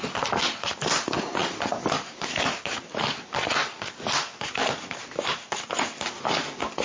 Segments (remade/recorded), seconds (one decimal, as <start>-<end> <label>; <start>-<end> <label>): 0.0-6.8 recorded